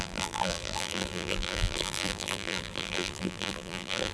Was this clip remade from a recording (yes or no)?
yes